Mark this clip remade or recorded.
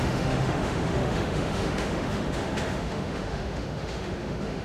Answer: remade